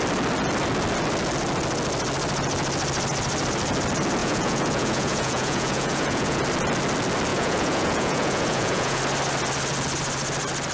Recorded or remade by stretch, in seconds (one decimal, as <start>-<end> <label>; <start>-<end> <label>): 0.0-4.2 recorded; 4.2-6.4 remade; 6.4-7.3 recorded; 7.3-9.0 remade; 9.0-10.7 recorded